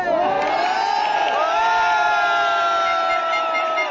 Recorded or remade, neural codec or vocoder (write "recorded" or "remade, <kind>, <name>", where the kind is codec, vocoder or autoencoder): recorded